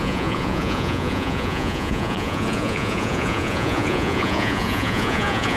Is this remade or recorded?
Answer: remade